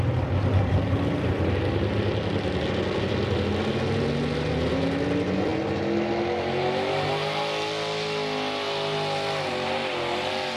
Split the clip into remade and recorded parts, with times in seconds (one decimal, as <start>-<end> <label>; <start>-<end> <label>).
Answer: 0.0-10.6 recorded